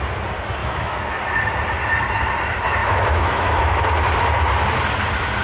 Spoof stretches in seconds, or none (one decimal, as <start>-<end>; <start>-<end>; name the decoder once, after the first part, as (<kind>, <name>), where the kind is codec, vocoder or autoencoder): 0.6-1.1 (autoencoder, DAC-VAE); 2.8-4.0

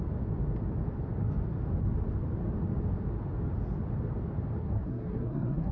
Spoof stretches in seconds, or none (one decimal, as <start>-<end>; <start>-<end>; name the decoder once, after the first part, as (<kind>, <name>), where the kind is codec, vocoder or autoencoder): 4.6-5.7 (codec, SNAC)

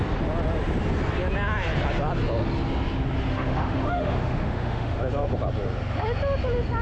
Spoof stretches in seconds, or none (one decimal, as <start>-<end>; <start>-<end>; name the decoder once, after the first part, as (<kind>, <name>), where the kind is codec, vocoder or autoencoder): 3.3-5.0 (autoencoder, DAC-VAE)

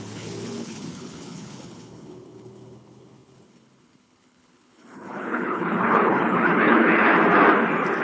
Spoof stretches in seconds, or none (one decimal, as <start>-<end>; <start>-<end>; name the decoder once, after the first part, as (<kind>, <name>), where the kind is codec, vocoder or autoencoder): 0.0-7.1 (codec, HILCodec)

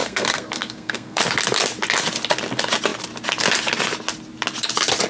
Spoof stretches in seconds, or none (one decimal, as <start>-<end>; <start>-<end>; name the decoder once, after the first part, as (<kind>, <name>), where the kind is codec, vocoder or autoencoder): 0.0-1.2 (codec, SNAC)

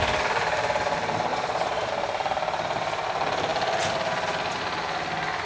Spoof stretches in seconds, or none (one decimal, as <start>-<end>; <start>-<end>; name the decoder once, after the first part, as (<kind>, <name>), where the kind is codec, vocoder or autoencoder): 1.3-1.9 (vocoder, Vocos)